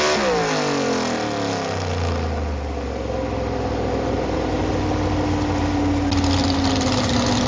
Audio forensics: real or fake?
real